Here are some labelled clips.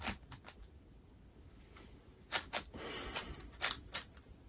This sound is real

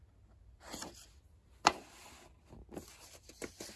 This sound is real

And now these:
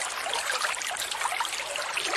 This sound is real